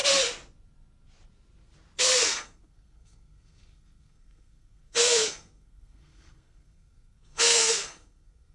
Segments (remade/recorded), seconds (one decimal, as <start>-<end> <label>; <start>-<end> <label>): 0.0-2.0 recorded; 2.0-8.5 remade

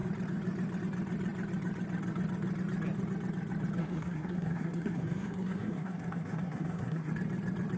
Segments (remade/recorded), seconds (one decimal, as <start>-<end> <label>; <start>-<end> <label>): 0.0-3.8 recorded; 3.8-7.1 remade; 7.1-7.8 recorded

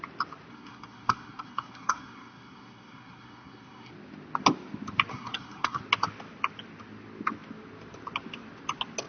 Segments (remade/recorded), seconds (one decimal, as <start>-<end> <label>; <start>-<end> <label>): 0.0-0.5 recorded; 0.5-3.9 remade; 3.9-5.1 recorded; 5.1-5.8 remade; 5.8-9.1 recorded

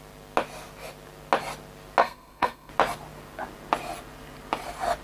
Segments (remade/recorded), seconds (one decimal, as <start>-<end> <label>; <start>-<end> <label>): 0.0-2.0 recorded; 2.0-2.7 remade; 2.7-5.0 recorded

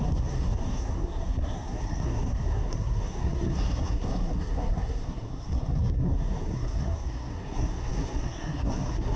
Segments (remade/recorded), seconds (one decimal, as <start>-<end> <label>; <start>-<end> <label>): 0.0-9.2 remade